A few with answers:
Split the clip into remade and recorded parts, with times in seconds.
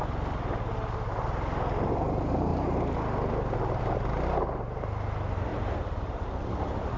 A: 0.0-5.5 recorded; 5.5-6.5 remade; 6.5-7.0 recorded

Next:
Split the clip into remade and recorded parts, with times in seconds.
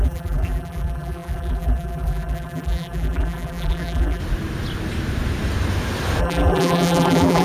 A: 0.0-4.2 remade; 4.2-6.2 recorded; 6.2-7.4 remade